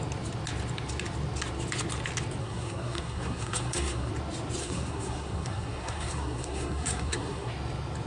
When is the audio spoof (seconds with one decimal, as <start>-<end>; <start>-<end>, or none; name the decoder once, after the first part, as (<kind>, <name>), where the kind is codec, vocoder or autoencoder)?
2.4-4.1 (codec, SNAC); 4.6-7.5